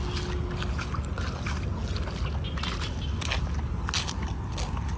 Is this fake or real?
real